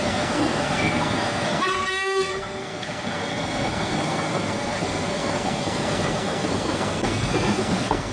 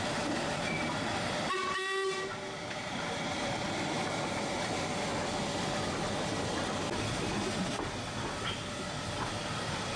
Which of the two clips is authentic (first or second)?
second